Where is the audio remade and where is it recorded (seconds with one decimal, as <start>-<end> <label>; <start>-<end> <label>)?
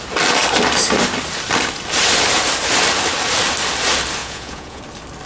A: 0.0-4.2 recorded; 4.2-4.8 remade; 4.8-5.3 recorded